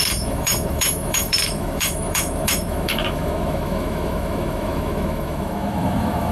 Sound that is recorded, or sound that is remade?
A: remade